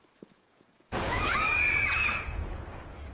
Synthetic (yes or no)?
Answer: yes